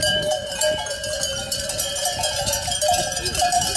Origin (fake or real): fake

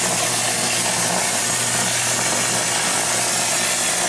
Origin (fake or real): real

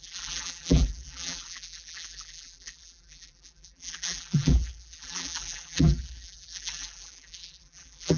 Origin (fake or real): fake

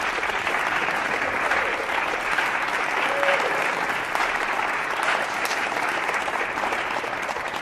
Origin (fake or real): fake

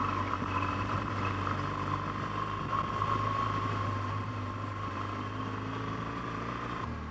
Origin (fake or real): fake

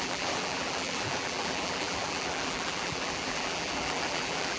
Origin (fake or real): fake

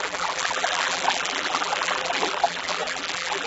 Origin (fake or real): fake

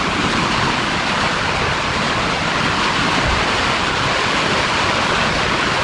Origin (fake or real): real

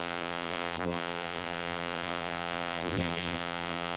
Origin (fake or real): fake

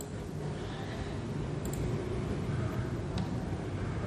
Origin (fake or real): real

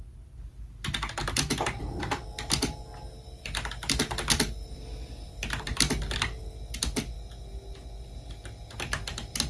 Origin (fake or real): real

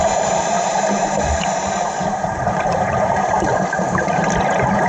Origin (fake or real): fake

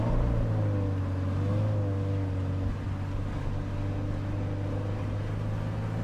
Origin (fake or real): real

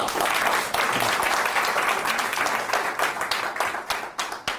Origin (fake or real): real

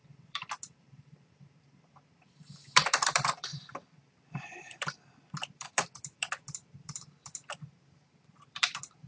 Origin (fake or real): fake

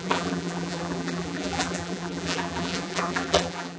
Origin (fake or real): fake